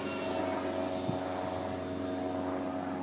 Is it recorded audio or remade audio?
recorded